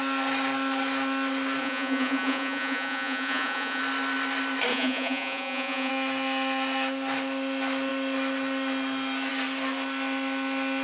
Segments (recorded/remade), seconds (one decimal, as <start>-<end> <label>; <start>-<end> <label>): 0.0-1.6 recorded; 1.6-3.8 remade; 3.8-4.7 recorded; 4.7-5.9 remade; 5.9-10.8 recorded

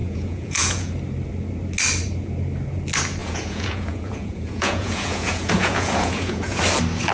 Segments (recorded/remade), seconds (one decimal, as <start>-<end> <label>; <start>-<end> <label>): 0.0-0.9 remade; 0.9-3.2 recorded; 3.2-6.6 remade; 6.6-7.1 recorded

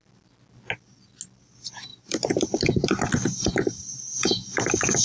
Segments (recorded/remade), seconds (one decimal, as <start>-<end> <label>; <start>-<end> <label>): 0.0-1.9 recorded; 1.9-5.0 remade

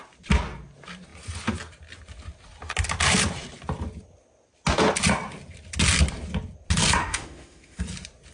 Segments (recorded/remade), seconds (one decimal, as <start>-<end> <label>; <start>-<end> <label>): 0.0-7.0 recorded; 7.0-7.8 remade; 7.8-8.3 recorded

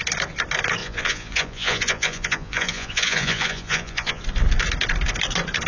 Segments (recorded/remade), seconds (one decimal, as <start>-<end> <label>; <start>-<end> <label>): 0.0-0.8 recorded; 0.8-4.2 remade; 4.2-5.7 recorded

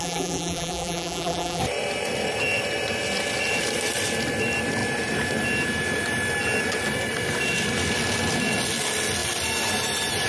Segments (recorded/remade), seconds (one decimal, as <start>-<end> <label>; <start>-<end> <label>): 0.0-1.6 remade; 1.6-10.3 recorded